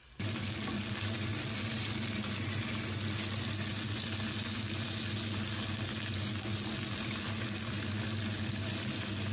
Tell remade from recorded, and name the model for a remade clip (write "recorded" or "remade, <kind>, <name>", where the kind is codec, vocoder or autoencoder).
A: recorded